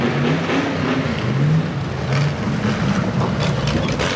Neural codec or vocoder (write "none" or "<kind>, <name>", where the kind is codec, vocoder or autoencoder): none